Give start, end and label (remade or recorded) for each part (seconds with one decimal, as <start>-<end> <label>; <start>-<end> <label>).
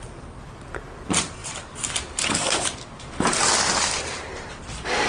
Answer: 0.0-1.4 recorded; 1.4-4.5 remade; 4.5-5.1 recorded